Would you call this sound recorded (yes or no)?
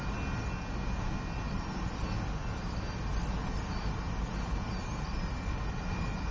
yes